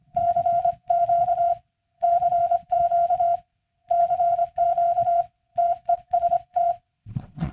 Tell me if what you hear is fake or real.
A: fake